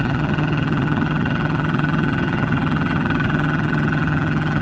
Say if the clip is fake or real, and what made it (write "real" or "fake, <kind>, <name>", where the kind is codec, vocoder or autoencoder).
fake, vocoder, HiFi-GAN